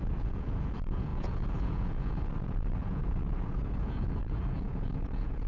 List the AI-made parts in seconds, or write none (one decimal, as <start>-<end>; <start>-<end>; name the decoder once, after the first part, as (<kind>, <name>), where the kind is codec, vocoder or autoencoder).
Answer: 0.0-5.5 (vocoder, Vocos)